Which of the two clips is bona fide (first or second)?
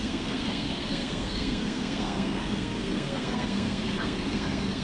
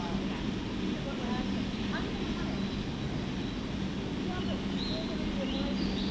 second